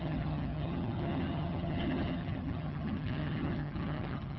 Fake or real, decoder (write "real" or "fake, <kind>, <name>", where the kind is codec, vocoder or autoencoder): fake, vocoder, HiFi-GAN